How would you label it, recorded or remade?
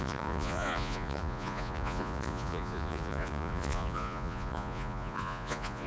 remade